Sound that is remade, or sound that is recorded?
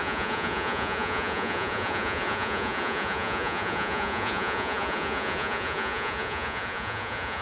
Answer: remade